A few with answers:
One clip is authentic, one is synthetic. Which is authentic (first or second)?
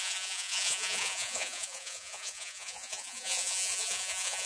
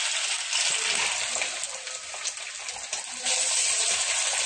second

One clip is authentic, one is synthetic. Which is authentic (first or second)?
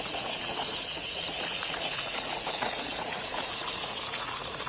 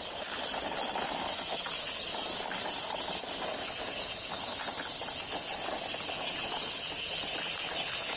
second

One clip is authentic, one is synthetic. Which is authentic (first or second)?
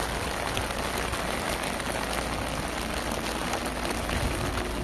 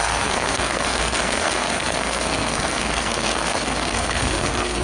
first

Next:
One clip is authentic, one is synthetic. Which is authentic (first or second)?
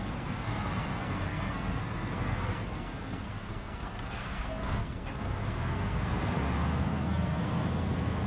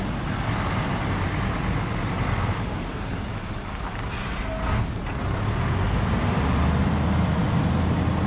second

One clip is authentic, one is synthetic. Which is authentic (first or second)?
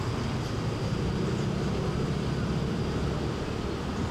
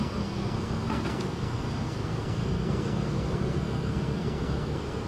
first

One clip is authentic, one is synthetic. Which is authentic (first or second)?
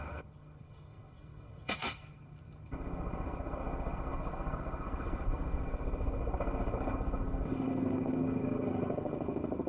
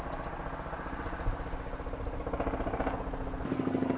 second